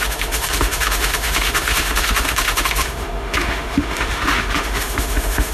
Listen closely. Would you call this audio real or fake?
fake